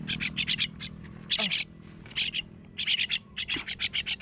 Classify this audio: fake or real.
real